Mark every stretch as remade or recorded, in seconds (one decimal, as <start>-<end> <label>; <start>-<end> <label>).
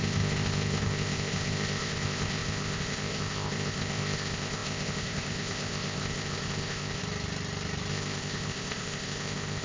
0.0-7.0 remade; 7.0-7.9 recorded; 7.9-9.6 remade